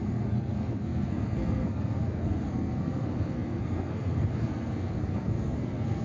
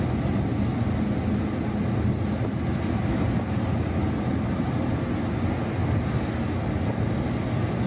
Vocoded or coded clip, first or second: first